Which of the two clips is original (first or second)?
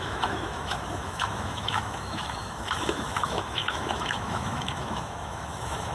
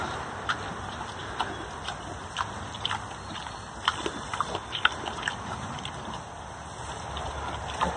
second